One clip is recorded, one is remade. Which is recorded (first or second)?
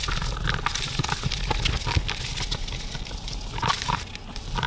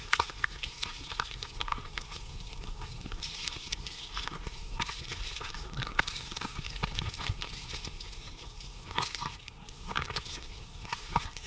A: first